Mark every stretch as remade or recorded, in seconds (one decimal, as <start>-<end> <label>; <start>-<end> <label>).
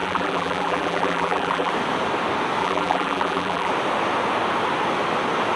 0.0-1.7 remade; 1.7-2.6 recorded; 2.6-3.7 remade; 3.7-5.6 recorded